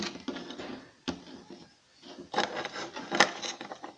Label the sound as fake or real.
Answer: real